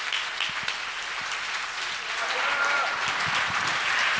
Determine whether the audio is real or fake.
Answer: real